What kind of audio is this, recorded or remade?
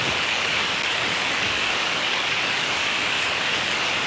remade